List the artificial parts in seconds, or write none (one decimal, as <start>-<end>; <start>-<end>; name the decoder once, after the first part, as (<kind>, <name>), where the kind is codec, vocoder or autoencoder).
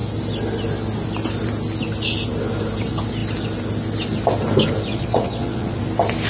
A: 4.9-5.8 (vocoder, Vocos)